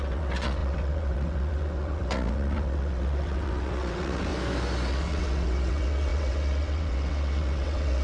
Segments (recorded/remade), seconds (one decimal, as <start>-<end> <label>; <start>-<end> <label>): 0.0-4.3 remade; 4.3-4.9 recorded; 4.9-8.0 remade